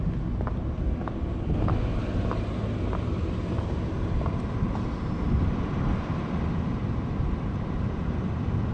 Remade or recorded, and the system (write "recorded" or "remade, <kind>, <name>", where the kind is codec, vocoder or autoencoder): recorded